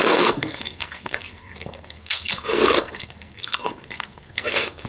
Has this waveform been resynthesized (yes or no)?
yes